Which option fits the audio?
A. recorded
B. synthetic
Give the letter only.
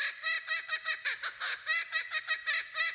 A